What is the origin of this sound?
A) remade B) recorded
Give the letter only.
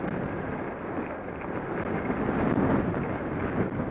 B